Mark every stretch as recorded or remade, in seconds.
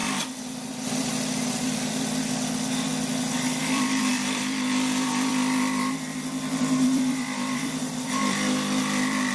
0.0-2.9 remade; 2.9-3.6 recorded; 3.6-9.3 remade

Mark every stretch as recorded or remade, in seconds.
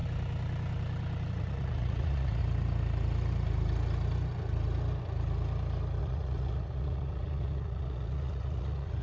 0.0-1.3 recorded; 1.3-2.4 remade; 2.4-6.0 recorded; 6.0-9.0 remade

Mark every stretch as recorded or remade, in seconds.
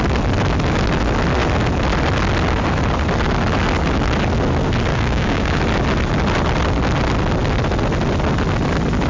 0.0-4.9 recorded; 4.9-5.6 remade; 5.6-9.1 recorded